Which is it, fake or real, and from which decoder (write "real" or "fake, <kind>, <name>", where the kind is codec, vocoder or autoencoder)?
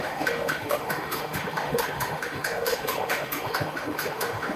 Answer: fake, autoencoder, DAC-VAE